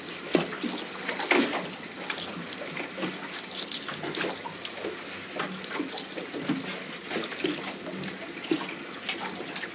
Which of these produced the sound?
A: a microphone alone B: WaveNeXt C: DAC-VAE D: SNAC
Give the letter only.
A